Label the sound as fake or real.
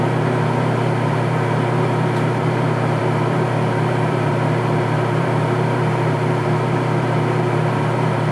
fake